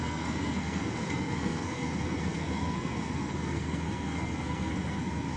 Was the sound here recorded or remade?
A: remade